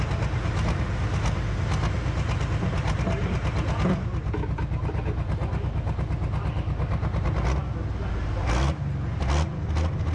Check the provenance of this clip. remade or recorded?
recorded